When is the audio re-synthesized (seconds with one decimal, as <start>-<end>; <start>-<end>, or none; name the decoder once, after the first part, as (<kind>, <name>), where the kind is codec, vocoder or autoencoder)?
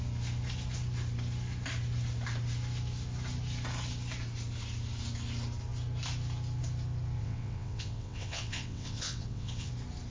7.2-9.7 (vocoder, WaveNeXt)